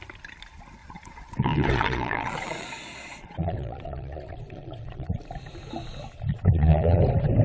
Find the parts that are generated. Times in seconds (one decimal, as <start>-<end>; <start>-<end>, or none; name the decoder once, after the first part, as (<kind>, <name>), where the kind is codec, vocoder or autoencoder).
0.8-5.2 (vocoder, Vocos); 6.3-7.0